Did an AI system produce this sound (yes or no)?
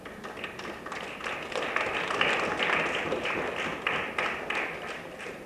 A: no